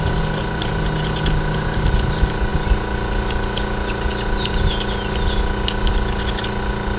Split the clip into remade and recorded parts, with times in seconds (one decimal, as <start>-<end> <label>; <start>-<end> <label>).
0.0-7.0 recorded